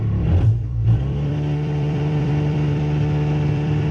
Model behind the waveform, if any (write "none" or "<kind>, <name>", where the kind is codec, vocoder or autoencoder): vocoder, BigVGAN v2